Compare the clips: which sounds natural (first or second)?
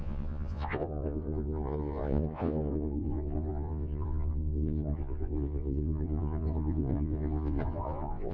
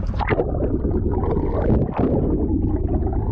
second